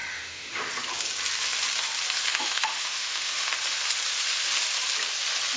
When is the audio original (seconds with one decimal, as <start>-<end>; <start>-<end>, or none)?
0.6-2.3; 3.5-5.6